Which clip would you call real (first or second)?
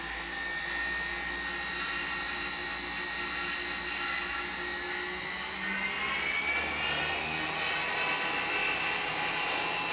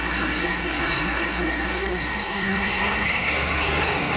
first